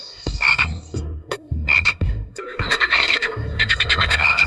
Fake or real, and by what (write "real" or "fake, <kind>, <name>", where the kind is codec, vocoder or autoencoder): fake, codec, SNAC